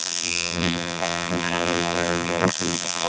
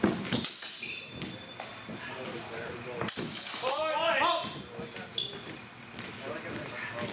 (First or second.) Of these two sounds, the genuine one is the second